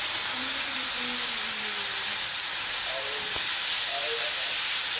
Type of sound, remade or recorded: recorded